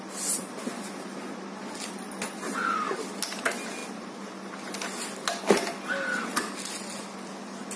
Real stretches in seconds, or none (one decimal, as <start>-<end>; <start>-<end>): 0.0-7.8